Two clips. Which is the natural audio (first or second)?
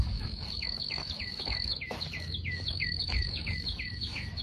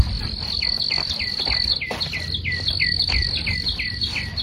second